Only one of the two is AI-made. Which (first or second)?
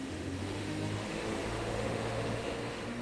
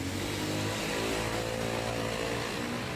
first